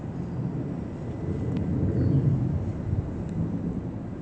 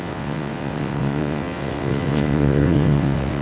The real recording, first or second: first